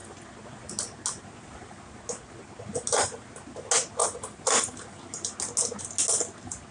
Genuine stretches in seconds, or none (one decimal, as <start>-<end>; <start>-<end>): 0.0-6.7